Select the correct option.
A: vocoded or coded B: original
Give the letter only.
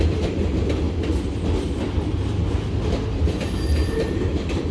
B